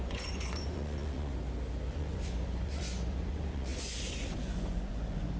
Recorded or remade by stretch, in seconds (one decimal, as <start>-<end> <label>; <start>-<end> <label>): 0.0-1.3 remade; 1.3-1.9 recorded; 1.9-5.4 remade